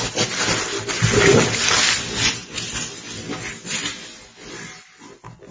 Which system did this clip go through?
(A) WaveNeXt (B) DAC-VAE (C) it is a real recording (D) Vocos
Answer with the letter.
C